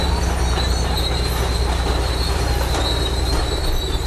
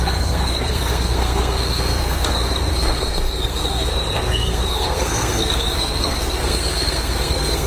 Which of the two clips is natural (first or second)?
first